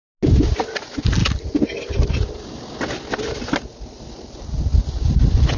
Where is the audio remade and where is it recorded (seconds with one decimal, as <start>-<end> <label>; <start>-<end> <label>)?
0.0-5.6 recorded